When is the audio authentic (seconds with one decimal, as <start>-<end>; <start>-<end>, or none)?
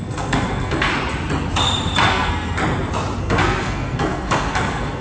0.9-2.1; 2.6-3.2